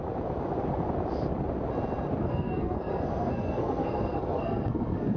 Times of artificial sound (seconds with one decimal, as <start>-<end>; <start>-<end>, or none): 2.2-5.2